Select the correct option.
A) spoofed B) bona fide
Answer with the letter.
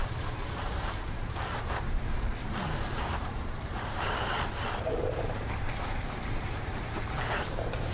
A